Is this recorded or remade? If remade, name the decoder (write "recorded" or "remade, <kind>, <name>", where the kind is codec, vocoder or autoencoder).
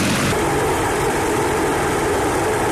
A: remade, vocoder, BigVGAN v2